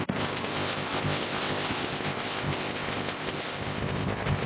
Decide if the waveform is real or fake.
fake